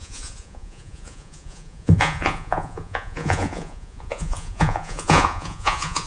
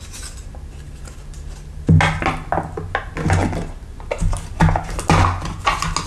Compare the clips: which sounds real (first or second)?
second